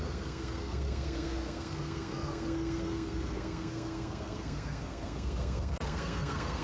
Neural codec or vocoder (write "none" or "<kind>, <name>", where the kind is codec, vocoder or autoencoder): codec, SNAC